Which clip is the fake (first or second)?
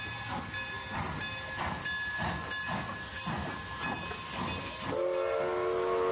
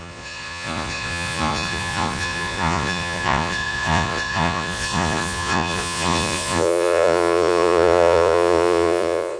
second